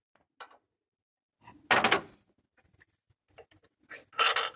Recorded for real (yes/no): yes